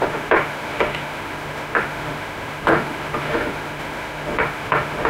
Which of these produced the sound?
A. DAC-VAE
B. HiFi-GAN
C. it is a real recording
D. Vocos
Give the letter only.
A